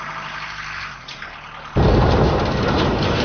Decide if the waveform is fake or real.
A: fake